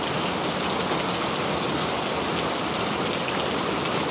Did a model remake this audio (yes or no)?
no